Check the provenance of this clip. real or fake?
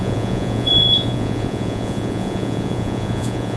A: fake